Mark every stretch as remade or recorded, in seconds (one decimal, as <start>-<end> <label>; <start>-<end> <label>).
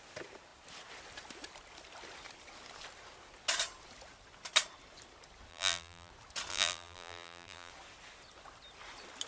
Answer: 0.0-5.5 recorded; 5.5-6.1 remade; 6.1-6.5 recorded; 6.5-7.7 remade; 7.7-9.3 recorded